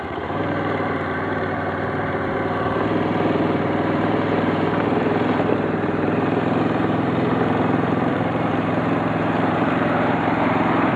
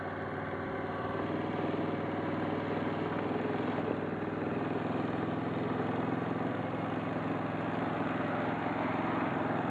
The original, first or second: second